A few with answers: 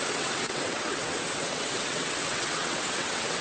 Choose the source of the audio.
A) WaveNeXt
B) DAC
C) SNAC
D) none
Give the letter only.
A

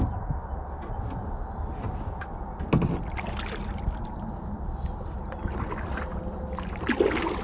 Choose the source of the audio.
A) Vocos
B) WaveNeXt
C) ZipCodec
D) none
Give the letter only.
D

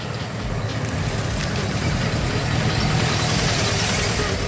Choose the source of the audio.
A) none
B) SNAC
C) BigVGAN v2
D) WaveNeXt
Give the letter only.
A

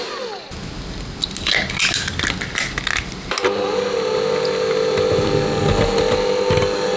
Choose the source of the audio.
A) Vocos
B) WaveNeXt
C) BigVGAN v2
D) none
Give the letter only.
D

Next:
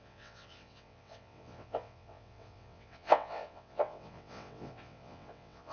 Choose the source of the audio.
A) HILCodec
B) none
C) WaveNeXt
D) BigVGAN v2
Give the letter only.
C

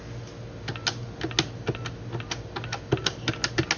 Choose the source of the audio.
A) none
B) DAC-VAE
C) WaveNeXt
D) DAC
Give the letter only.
A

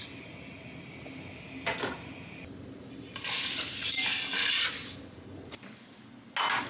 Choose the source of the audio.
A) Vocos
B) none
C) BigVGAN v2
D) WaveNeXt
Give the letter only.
B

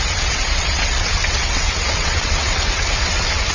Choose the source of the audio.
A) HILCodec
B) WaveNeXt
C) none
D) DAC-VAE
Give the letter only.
B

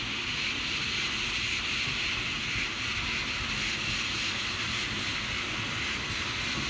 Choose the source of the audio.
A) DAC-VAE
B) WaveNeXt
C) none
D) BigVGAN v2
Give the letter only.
C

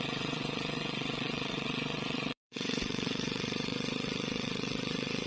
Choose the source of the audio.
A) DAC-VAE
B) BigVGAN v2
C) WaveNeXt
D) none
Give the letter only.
C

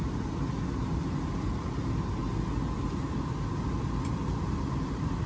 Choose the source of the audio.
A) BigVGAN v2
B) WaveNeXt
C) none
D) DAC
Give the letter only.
C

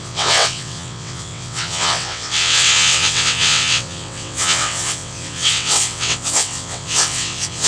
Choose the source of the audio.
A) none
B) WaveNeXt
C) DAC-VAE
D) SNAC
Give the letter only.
B